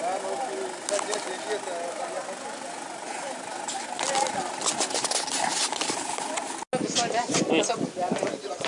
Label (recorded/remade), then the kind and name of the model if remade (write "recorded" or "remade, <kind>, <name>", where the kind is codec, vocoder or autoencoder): recorded